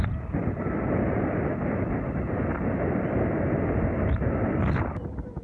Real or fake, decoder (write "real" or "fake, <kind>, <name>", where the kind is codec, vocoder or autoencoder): real